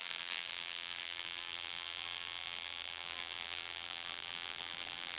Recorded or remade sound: remade